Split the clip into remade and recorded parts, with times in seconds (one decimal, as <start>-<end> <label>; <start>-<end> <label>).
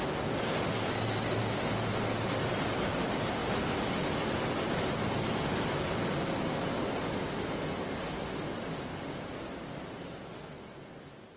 0.0-8.9 recorded; 8.9-9.4 remade; 9.4-11.4 recorded